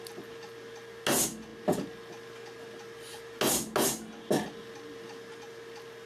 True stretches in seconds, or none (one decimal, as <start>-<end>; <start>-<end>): 0.0-6.1